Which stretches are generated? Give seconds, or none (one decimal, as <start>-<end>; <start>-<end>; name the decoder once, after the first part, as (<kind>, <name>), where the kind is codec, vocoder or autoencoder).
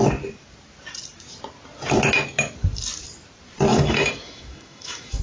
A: 3.7-5.2 (autoencoder, DAC-VAE)